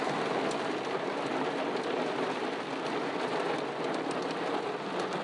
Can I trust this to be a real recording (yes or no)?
yes